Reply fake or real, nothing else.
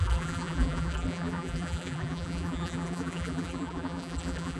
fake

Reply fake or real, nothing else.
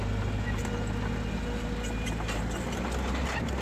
real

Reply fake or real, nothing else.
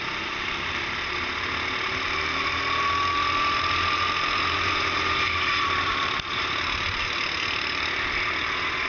real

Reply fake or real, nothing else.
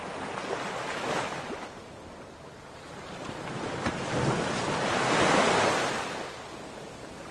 real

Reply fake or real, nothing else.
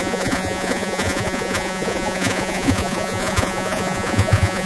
fake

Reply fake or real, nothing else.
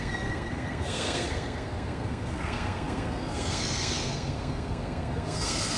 fake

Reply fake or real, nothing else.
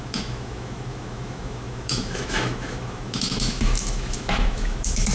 fake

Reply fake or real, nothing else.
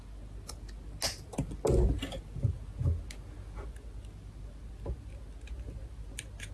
real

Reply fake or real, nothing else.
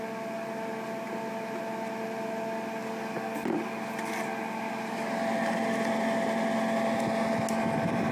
real